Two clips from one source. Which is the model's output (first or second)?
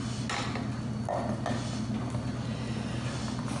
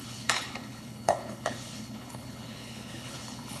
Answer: second